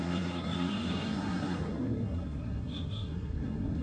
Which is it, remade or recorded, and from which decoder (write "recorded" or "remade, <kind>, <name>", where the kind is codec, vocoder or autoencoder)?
remade, codec, SNAC